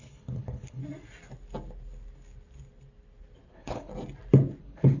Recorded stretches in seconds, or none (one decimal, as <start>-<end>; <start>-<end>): 0.8-3.5; 3.9-4.6